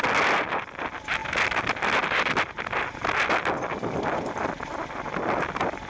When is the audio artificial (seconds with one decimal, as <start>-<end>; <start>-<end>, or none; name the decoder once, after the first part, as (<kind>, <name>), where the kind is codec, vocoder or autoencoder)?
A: none